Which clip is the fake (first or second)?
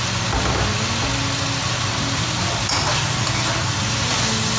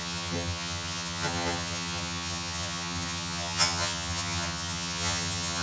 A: second